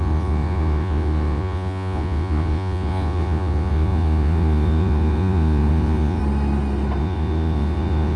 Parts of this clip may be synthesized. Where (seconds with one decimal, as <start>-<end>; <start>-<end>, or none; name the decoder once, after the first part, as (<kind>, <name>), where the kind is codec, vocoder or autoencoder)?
0.0-6.2 (vocoder, Vocos); 7.0-8.2